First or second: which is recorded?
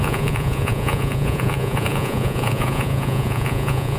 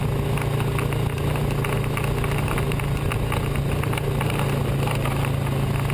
second